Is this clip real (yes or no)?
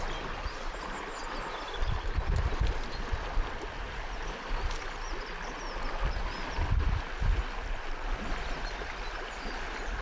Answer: yes